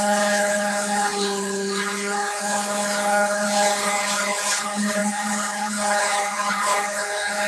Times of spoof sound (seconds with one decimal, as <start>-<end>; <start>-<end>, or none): 0.0-7.5